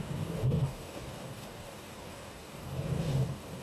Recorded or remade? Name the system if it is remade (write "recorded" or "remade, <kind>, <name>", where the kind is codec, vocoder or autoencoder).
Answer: remade, codec, DAC